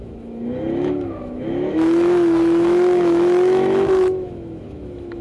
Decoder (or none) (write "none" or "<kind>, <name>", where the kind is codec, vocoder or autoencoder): autoencoder, DAC-VAE